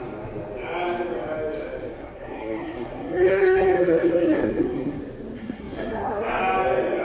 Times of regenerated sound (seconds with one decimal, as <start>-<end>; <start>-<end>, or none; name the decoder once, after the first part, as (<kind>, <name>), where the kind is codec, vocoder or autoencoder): 1.9-5.0 (codec, SNAC); 5.4-6.4